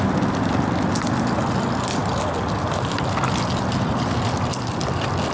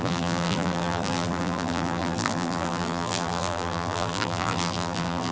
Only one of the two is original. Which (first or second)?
first